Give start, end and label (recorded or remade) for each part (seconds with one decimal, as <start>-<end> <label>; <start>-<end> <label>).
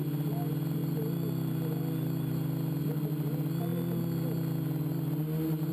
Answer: 0.0-5.7 recorded